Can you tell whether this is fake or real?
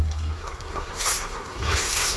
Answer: fake